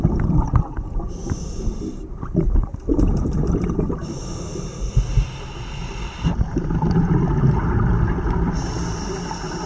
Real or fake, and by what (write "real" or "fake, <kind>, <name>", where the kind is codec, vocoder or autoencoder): real